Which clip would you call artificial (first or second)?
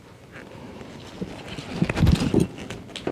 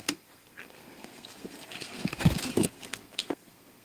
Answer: second